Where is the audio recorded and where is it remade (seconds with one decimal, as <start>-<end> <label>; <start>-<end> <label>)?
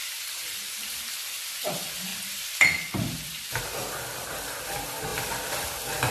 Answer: 0.0-1.4 remade; 1.4-2.1 recorded; 2.1-3.6 remade; 3.6-6.1 recorded